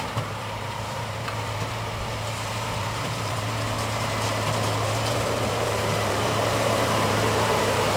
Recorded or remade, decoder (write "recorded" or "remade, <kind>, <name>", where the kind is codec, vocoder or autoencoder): remade, vocoder, BigVGAN v2